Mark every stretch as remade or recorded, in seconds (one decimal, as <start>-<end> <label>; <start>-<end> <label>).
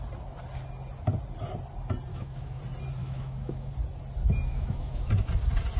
0.0-2.1 recorded; 2.1-2.6 remade; 2.6-3.0 recorded; 3.0-3.7 remade; 3.7-4.5 recorded; 4.5-5.1 remade; 5.1-5.8 recorded